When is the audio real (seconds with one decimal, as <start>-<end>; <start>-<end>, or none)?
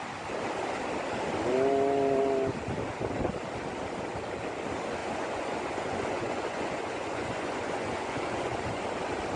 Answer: 0.0-5.0; 8.8-9.4